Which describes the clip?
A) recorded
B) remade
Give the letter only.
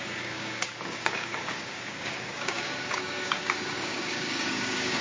B